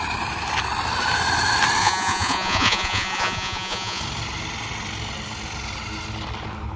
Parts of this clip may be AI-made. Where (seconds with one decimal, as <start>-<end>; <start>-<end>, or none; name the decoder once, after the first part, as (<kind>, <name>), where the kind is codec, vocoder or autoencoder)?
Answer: 1.8-4.0 (vocoder, Vocos)